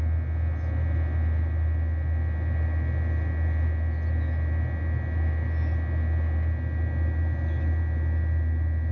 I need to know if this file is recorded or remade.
recorded